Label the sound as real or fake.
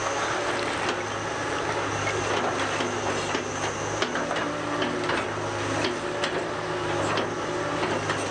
real